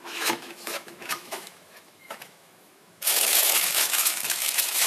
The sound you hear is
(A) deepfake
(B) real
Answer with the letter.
A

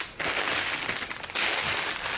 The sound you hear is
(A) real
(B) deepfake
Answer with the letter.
A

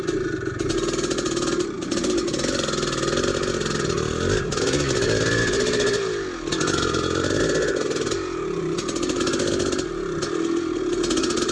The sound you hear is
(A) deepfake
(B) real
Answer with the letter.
B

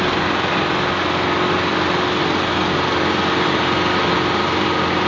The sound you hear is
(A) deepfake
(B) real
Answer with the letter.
B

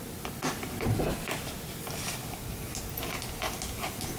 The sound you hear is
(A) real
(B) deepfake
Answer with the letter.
A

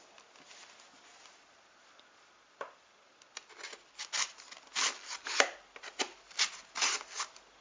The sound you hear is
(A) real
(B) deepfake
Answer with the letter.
A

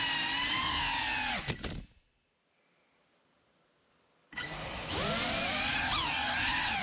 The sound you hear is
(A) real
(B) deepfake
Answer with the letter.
A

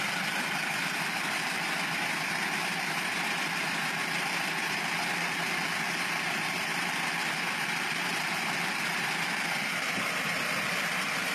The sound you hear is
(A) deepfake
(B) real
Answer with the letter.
A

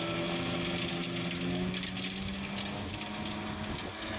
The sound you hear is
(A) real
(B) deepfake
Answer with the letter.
A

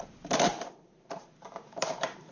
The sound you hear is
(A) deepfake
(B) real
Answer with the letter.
A